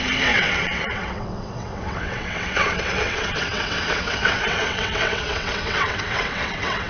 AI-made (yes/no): yes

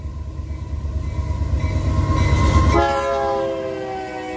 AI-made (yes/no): no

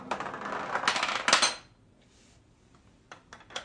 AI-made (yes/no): no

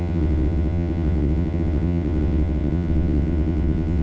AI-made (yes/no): yes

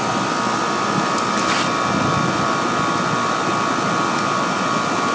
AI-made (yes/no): no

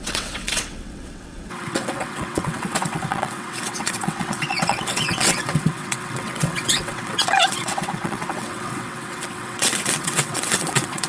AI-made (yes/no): yes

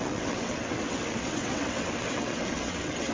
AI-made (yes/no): yes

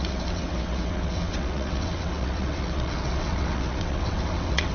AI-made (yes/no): yes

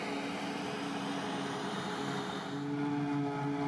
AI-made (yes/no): no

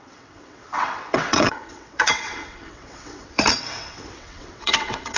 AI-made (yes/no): yes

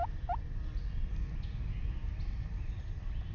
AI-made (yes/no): no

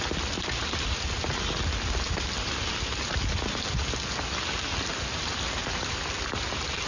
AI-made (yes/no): no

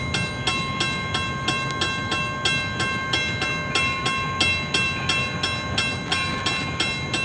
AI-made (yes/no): no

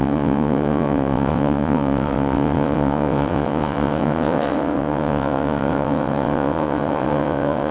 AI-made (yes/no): yes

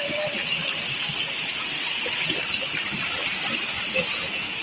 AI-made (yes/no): no